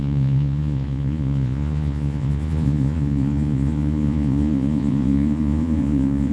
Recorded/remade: remade